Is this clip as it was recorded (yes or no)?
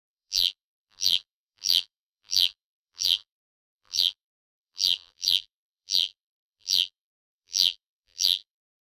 no